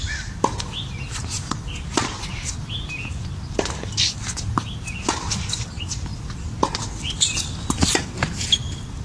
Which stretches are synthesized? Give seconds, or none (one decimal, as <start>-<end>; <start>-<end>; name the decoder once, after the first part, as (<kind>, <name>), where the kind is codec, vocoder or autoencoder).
none